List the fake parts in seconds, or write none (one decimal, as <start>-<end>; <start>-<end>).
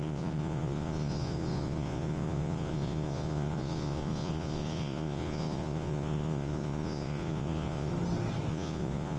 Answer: 0.0-7.9; 8.5-9.2